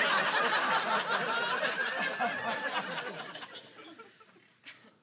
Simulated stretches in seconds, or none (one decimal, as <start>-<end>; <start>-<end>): none